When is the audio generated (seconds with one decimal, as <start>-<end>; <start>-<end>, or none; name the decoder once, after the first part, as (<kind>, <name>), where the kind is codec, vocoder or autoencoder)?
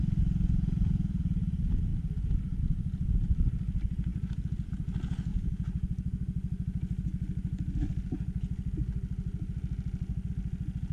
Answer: none